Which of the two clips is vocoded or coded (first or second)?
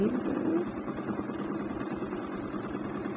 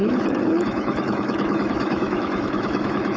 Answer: second